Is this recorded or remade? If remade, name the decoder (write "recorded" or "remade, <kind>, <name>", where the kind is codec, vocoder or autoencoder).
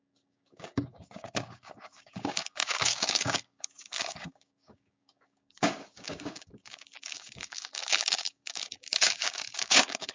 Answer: remade, codec, DAC